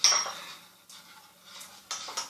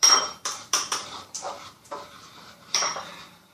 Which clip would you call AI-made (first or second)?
second